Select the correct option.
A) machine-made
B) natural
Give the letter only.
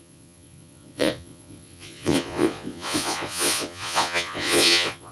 A